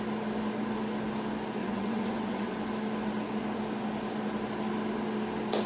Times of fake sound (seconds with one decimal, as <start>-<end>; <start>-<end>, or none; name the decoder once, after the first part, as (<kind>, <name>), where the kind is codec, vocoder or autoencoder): 1.6-2.6 (vocoder, WaveNeXt)